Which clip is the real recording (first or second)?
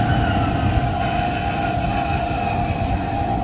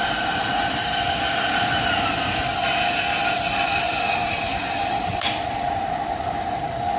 first